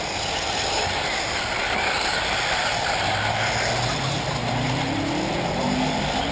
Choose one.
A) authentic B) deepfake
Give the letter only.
A